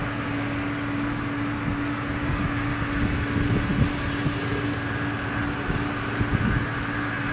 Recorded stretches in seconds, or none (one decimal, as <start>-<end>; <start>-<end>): 0.0-2.2; 2.8-7.3